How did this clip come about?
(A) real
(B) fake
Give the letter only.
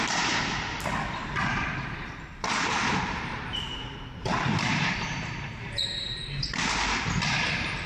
B